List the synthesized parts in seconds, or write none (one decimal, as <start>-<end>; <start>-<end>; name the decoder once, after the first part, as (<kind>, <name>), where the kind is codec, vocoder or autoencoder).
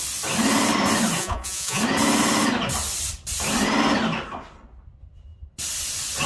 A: 1.2-1.8 (vocoder, Vocos)